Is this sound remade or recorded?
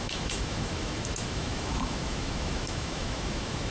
remade